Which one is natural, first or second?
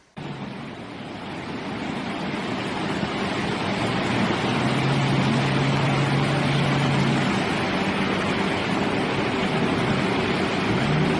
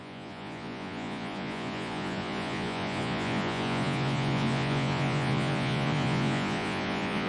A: first